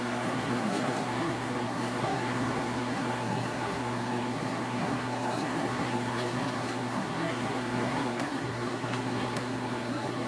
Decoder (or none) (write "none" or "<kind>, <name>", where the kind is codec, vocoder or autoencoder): codec, SNAC